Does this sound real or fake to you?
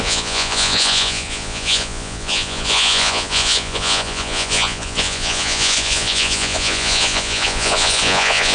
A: fake